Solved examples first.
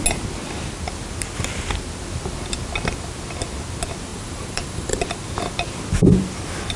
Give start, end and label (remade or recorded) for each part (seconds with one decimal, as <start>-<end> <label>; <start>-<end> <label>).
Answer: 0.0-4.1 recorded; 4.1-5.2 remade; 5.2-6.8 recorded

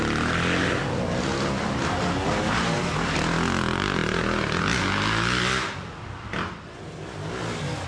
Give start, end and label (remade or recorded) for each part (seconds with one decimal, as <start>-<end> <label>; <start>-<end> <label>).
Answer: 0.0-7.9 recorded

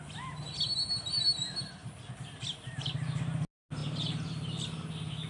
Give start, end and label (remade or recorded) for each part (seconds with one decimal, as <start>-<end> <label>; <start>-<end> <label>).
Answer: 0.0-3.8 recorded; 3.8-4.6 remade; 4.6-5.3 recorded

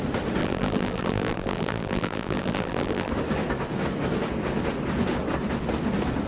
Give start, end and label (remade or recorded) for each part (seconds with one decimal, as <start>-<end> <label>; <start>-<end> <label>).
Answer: 0.0-0.4 recorded; 0.4-3.1 remade; 3.1-6.3 recorded

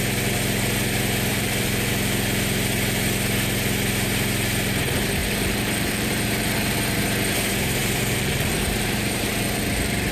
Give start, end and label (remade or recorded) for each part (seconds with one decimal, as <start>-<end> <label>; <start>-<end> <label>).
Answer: 0.0-1.3 recorded; 1.3-1.9 remade; 1.9-5.2 recorded; 5.2-7.0 remade; 7.0-7.8 recorded; 7.8-9.3 remade; 9.3-10.1 recorded

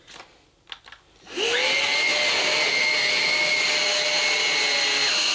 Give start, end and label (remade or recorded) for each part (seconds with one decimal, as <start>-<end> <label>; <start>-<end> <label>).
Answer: 0.0-5.3 recorded